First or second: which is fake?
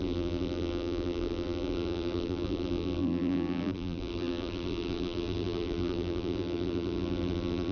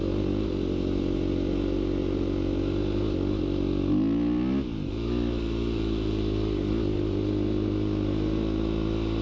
first